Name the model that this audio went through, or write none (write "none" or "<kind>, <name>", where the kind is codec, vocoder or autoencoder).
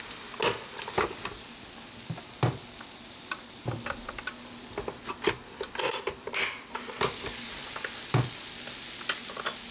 none